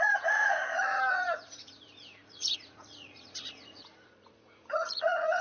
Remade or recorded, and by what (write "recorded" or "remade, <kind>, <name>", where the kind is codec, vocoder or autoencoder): remade, vocoder, Vocos